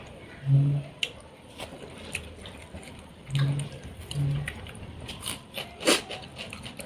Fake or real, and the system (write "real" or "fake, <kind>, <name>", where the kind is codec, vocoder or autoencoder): real